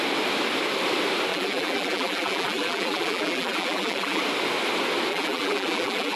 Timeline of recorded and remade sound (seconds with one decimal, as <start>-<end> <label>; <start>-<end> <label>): 0.0-1.3 recorded; 1.3-4.2 remade; 4.2-5.1 recorded; 5.1-6.2 remade